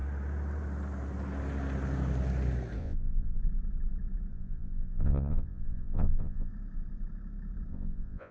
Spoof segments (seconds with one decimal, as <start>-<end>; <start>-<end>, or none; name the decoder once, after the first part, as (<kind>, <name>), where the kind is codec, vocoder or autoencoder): 2.8-3.4 (vocoder, Vocos); 4.3-6.5; 7.7-8.3